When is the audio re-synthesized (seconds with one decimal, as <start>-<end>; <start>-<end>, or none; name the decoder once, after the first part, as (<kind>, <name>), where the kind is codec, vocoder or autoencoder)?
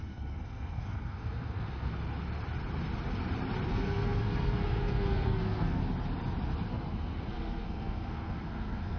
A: 0.0-1.9 (codec, SNAC); 3.7-5.8; 6.7-9.0